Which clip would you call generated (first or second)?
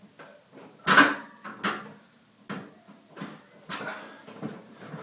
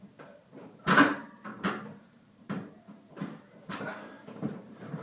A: second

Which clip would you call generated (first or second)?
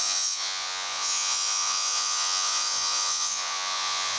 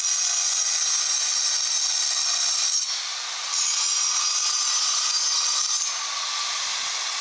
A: first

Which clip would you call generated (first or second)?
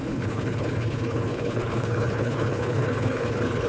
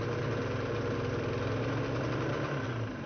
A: first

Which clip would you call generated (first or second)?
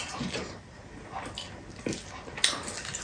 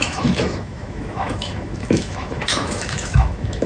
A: second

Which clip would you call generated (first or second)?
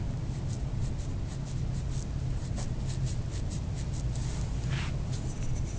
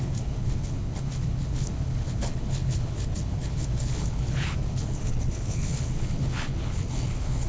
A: second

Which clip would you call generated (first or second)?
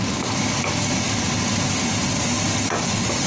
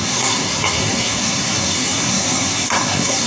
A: second